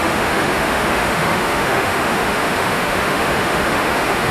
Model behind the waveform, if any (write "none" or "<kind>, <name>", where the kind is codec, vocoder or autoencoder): autoencoder, DAC-VAE